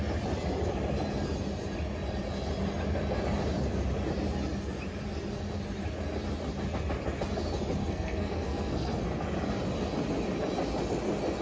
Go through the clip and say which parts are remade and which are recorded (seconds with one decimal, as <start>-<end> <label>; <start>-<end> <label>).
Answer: 0.0-7.8 recorded; 7.8-9.0 remade; 9.0-11.4 recorded

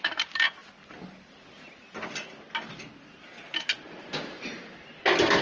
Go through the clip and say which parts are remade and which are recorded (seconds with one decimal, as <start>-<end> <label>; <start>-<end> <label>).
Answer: 0.0-5.4 recorded

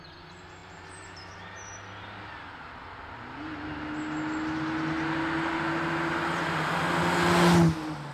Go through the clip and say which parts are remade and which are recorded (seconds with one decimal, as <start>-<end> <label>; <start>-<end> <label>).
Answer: 0.0-0.6 recorded; 0.6-1.4 remade; 1.4-8.1 recorded

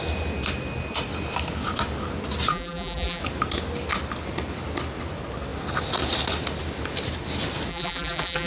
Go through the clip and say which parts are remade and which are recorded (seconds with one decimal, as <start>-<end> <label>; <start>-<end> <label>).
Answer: 0.0-2.5 recorded; 2.5-3.2 remade; 3.2-7.7 recorded; 7.7-8.5 remade

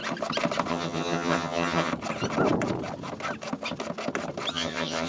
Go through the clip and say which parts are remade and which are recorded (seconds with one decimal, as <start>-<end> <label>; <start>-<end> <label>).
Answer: 0.0-0.7 recorded; 0.7-1.9 remade; 1.9-4.5 recorded; 4.5-5.1 remade